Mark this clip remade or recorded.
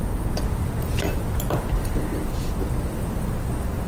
recorded